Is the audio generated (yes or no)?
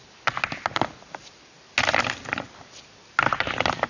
no